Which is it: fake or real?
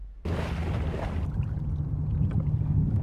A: real